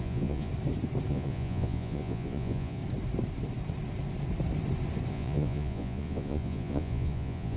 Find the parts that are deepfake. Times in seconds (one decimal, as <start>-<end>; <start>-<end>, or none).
0.0-0.5; 1.1-2.8; 5.1-7.6